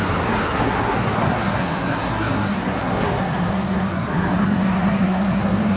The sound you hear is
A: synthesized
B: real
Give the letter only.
A